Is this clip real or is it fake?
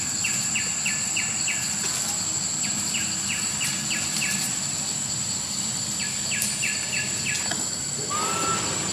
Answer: real